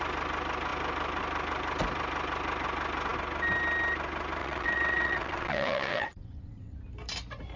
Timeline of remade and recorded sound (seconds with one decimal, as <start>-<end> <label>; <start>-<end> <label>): 0.0-4.4 recorded; 4.4-6.8 remade; 6.8-7.6 recorded